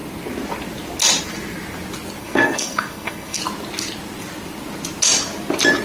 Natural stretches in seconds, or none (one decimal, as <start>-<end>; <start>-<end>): 0.0-2.2; 3.4-5.8

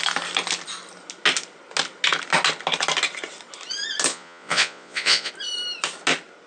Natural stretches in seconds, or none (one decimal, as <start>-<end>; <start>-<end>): 0.0-4.1; 5.3-6.5

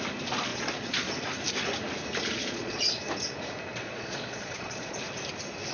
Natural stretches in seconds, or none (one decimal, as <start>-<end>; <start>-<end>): 0.0-0.5; 1.1-2.4; 3.0-3.7; 5.0-5.7

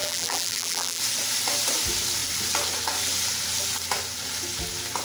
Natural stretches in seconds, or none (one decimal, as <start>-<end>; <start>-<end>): 1.0-5.0

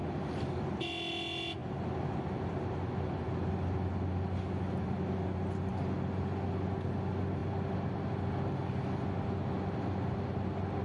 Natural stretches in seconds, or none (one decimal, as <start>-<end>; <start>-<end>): 0.0-10.8

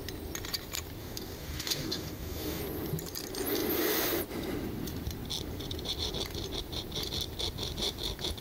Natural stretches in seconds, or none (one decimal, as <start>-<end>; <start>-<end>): 0.0-1.0; 2.6-8.4